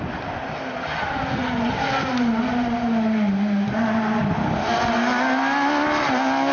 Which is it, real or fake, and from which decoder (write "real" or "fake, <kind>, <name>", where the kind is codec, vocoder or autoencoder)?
real